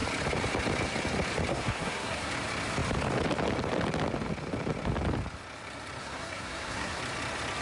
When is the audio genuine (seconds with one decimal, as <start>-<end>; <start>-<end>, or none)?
0.0-1.5; 2.3-6.0; 7.0-7.6